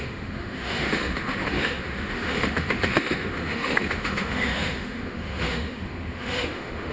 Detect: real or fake fake